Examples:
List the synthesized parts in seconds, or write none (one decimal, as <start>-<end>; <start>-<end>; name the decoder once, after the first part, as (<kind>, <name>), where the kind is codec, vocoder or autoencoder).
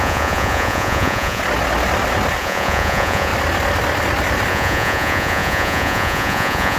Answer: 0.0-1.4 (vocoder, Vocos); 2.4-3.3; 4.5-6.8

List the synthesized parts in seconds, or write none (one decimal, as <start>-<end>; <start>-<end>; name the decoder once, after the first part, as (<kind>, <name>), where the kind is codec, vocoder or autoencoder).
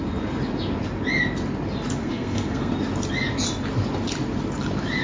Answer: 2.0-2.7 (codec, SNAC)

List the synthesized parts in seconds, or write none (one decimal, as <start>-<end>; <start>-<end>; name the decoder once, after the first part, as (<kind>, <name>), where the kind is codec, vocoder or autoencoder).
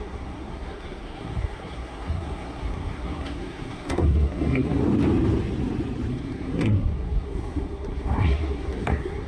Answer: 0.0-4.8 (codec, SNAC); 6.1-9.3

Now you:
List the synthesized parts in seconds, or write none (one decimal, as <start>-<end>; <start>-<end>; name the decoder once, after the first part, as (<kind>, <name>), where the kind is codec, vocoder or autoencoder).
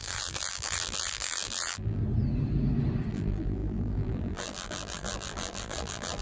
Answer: 0.0-2.0 (vocoder, BigVGAN v2); 3.1-6.2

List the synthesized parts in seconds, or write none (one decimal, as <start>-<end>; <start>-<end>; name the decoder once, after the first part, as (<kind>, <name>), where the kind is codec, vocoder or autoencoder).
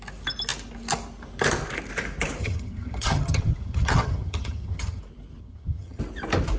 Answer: 2.4-5.0 (vocoder, HiFi-GAN); 5.4-6.0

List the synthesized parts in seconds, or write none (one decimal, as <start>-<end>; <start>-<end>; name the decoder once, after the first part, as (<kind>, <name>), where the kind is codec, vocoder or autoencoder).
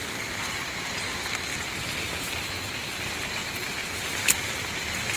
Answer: 1.5-2.5 (vocoder, BigVGAN v2)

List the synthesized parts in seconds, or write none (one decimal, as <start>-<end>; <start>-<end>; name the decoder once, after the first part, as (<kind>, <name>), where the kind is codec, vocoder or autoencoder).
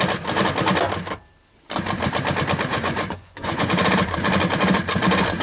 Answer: 2.7-3.7 (vocoder, Vocos)